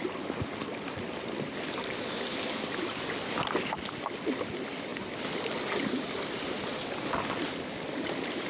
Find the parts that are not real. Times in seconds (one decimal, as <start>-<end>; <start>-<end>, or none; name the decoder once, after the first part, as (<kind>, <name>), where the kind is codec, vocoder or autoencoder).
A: none